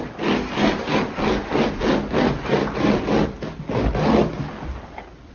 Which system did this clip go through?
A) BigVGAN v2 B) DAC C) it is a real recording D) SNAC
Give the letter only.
C